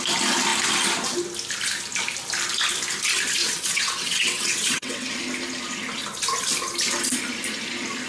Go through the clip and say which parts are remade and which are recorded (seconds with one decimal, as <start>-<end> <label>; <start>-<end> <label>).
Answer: 0.0-3.4 recorded; 3.4-5.2 remade; 5.2-8.1 recorded